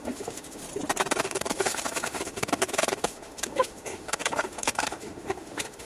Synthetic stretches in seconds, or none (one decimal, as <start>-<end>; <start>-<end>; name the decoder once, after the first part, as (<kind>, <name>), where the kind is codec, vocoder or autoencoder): 0.0-0.6 (autoencoder, DAC-VAE); 1.2-5.8